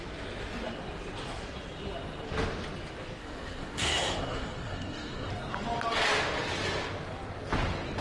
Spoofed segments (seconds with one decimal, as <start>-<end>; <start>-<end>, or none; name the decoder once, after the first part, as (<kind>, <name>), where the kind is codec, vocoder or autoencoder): 3.2-5.3 (codec, SNAC)

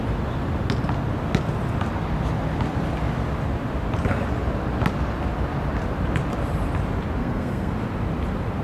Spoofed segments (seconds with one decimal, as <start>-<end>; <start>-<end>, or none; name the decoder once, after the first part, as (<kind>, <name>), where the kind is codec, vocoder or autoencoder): 7.2-7.7 (codec, SNAC)

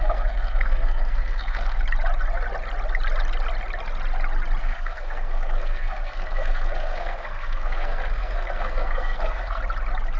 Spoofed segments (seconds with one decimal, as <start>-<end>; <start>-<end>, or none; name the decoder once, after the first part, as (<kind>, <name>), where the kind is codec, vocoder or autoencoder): 0.0-1.8 (codec, SNAC); 4.6-9.6

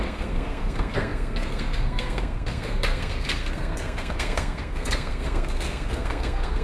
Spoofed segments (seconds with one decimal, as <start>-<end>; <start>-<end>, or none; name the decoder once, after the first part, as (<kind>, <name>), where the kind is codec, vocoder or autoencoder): 0.0-6.6 (codec, SNAC)

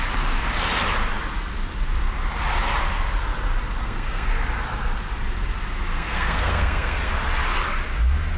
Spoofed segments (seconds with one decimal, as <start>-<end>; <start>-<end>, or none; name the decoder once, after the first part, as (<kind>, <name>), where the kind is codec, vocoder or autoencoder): 3.8-4.3 (codec, SNAC); 5.9-7.1

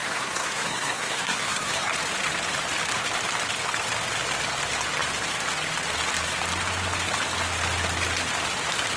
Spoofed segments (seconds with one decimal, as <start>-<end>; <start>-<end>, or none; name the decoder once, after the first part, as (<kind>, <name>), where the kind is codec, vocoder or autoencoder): 0.0-1.9 (codec, SNAC)

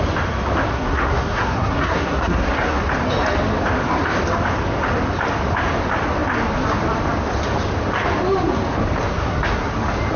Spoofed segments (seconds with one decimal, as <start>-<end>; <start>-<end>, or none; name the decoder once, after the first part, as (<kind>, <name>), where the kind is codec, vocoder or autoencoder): 0.7-2.8 (codec, SNAC); 9.1-9.7

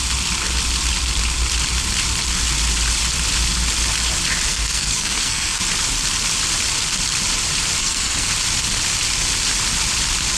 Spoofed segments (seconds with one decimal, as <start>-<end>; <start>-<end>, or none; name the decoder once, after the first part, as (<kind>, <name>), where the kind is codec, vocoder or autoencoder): 4.5-5.6 (codec, SNAC); 7.8-8.3